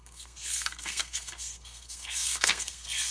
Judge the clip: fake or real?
fake